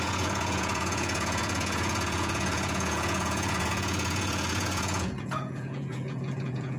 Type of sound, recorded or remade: remade